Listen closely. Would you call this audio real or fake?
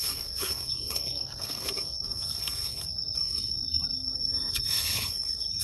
fake